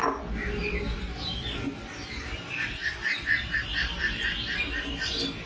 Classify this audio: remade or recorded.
recorded